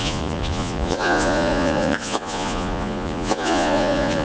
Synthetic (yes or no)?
yes